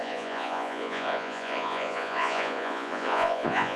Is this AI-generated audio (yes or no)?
yes